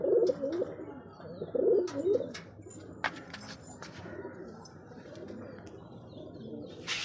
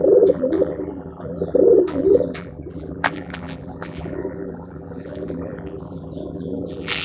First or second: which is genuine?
first